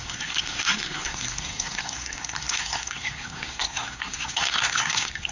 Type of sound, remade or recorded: remade